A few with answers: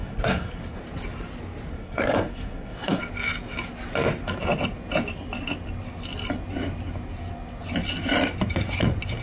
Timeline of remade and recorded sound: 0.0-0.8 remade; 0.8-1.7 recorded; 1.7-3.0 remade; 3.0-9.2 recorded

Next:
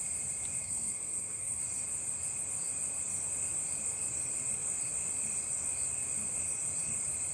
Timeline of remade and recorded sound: 0.0-0.6 recorded; 0.6-1.6 remade; 1.6-7.3 recorded

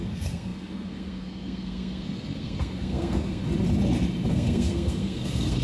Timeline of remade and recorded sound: 0.0-3.4 remade; 3.4-4.3 recorded; 4.3-5.6 remade

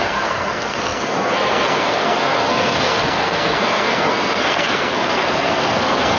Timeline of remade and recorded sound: 0.0-6.2 remade

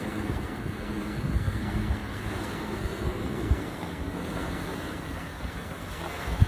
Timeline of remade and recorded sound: 0.0-6.5 remade